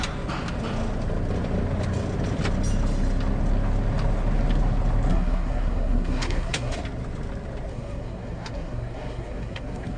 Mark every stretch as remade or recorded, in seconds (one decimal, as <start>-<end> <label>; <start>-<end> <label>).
0.0-5.1 recorded; 5.1-6.7 remade; 6.7-7.7 recorded; 7.7-10.0 remade